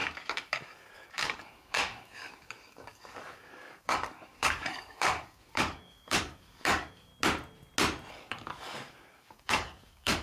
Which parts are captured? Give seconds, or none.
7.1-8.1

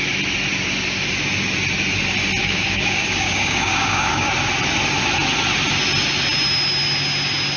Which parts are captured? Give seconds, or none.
0.0-2.4; 4.3-7.6

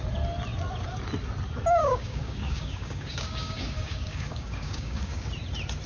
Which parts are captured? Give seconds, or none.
0.0-1.8; 5.3-5.9

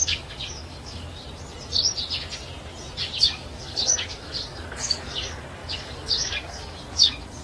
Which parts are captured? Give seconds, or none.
1.2-3.2